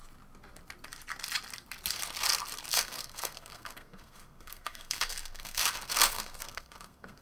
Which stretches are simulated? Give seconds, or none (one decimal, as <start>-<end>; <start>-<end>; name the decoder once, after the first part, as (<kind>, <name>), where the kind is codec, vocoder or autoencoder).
2.7-7.2 (codec, SNAC)